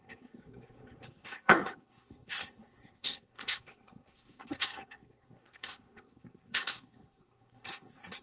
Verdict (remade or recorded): remade